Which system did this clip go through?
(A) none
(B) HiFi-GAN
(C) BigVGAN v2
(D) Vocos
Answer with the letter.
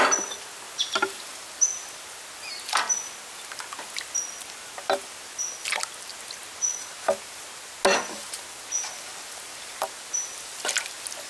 A